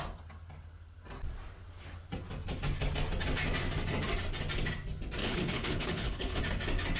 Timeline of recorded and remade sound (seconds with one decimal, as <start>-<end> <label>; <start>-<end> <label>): 0.0-5.2 recorded; 5.2-6.4 remade; 6.4-7.0 recorded